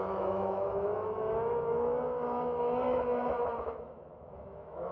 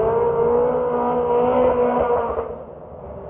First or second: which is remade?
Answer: first